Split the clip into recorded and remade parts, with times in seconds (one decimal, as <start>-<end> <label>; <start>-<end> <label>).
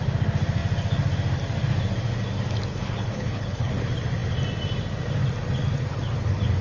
0.0-2.7 recorded; 2.7-3.7 remade; 3.7-6.6 recorded